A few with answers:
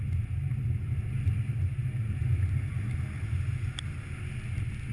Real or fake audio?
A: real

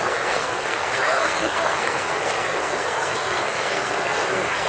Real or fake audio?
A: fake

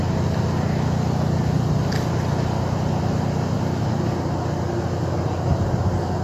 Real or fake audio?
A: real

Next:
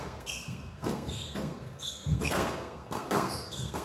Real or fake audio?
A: fake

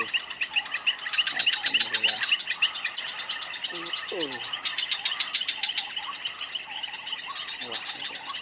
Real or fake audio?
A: real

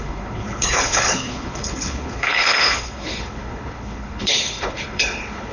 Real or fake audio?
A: fake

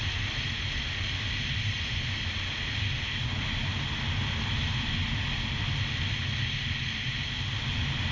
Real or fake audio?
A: real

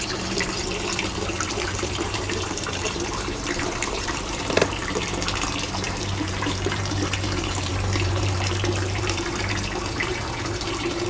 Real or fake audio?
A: fake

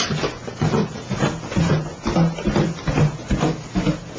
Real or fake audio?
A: real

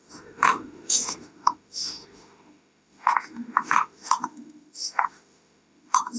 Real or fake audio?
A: fake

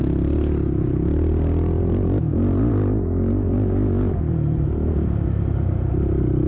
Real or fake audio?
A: real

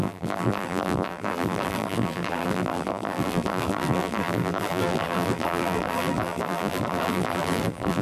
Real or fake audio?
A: fake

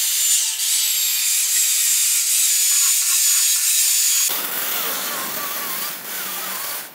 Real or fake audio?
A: real